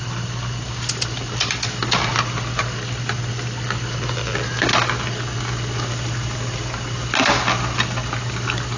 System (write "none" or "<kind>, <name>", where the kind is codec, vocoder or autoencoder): none